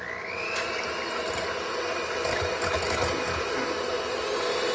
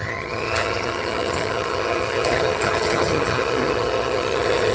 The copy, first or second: second